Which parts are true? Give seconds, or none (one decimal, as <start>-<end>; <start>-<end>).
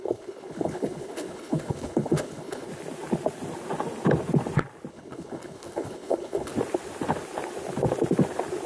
2.7-4.9; 6.5-8.7